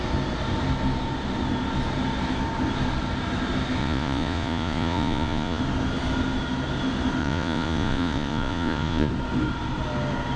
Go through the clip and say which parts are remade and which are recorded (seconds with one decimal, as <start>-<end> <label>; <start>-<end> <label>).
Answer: 0.0-3.8 recorded; 3.8-5.6 remade; 5.6-7.2 recorded; 7.2-9.1 remade; 9.1-10.4 recorded